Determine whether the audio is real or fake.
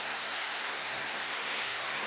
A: fake